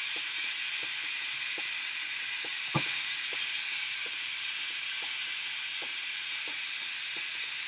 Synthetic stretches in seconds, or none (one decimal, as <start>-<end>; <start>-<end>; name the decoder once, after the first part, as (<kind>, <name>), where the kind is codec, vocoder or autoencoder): none